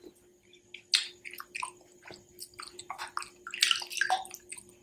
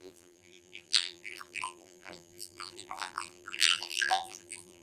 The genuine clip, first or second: first